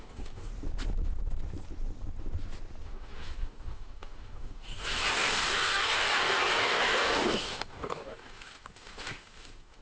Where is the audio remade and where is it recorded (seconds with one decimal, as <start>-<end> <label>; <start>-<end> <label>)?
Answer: 0.0-0.5 remade; 0.5-2.8 recorded; 2.8-9.8 remade